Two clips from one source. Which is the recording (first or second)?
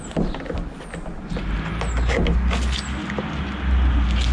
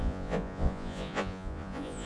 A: first